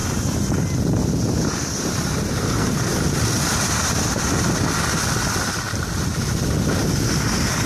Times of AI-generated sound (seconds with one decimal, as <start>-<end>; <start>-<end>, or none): 2.4-2.9